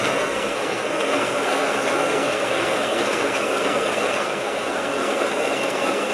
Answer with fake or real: fake